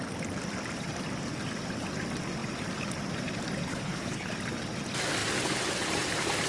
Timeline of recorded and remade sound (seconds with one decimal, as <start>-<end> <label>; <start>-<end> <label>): 0.0-3.7 recorded; 3.7-4.3 remade; 4.3-6.5 recorded